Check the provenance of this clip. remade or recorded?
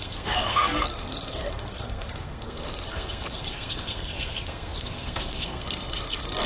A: remade